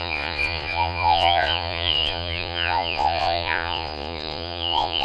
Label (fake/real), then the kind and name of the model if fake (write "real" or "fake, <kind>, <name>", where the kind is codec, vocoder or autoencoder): fake, vocoder, Vocos